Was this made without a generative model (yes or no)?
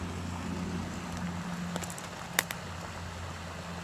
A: yes